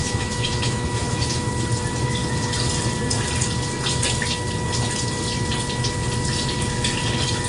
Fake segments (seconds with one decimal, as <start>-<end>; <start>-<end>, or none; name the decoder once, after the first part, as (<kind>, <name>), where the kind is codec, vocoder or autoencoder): 0.0-1.5 (autoencoder, DAC-VAE)